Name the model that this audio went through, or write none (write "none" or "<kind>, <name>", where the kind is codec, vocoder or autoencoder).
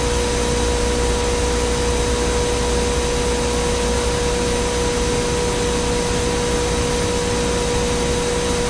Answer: none